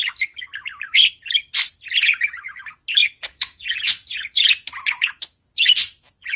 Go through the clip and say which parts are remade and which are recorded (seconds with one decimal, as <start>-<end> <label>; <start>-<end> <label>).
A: 0.0-3.0 recorded; 3.0-5.5 remade; 5.5-6.4 recorded